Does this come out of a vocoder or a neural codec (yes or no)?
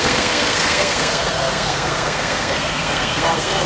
yes